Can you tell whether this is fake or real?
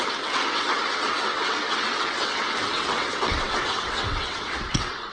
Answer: fake